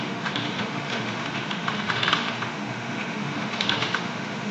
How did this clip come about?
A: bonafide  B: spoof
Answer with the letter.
B